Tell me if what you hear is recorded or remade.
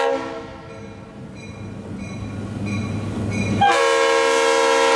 recorded